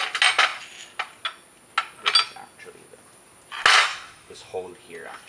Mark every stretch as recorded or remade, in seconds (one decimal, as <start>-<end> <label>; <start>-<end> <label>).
0.0-3.9 recorded; 3.9-4.7 remade; 4.7-5.3 recorded